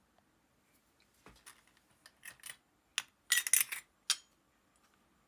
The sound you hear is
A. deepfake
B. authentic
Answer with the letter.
B